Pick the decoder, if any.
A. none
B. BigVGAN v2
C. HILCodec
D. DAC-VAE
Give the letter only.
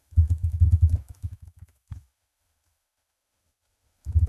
D